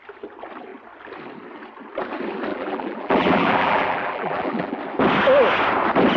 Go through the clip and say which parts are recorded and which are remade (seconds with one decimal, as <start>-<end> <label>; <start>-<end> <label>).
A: 0.0-2.5 recorded; 2.5-4.8 remade; 4.8-6.2 recorded